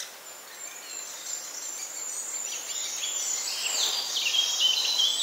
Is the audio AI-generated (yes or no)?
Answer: no